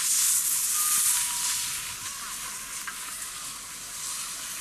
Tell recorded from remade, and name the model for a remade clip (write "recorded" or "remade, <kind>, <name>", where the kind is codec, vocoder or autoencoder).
recorded